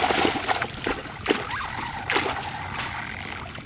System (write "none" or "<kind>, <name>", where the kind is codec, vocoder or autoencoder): none